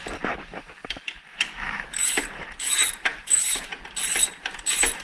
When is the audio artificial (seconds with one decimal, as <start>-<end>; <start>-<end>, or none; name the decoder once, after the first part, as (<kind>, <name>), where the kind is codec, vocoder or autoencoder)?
1.3-2.2 (autoencoder, DAC-VAE); 3.1-3.7